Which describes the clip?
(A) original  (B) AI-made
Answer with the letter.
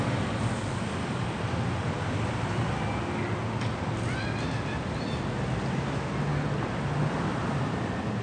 A